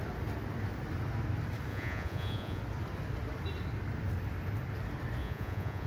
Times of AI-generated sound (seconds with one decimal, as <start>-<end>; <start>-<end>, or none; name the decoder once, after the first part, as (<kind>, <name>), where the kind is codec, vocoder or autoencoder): 1.7-2.6 (vocoder, Vocos); 5.2-5.9